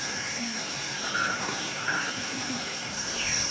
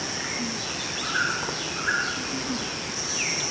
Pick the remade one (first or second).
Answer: first